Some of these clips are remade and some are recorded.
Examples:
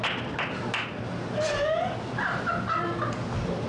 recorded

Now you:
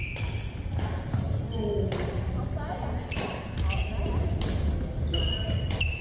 recorded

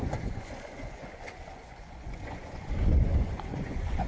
remade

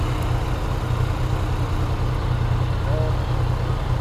recorded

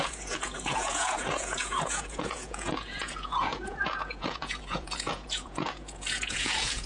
remade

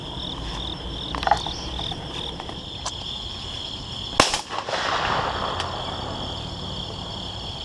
recorded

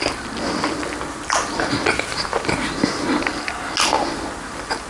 recorded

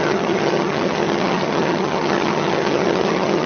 remade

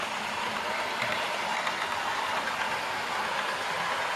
recorded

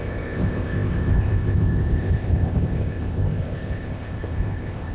remade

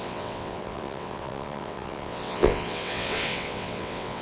remade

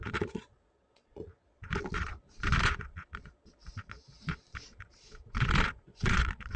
remade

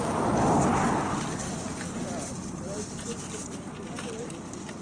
recorded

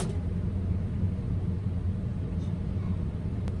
recorded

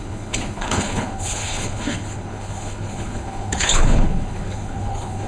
remade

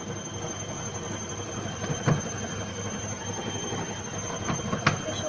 recorded